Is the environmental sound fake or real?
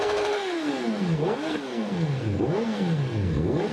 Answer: fake